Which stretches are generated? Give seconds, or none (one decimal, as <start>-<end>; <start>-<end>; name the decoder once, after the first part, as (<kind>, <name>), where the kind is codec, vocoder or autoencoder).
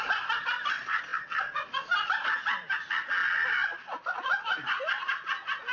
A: none